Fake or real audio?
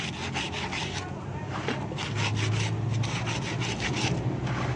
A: real